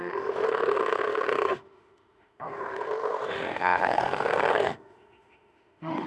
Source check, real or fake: fake